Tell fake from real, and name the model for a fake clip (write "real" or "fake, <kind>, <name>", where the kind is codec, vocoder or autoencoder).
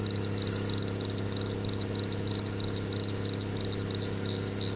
real